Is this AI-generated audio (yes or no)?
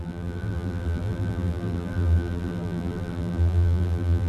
yes